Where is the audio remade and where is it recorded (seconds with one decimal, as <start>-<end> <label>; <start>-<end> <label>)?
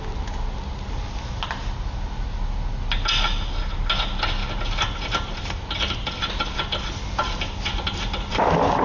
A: 0.0-8.8 recorded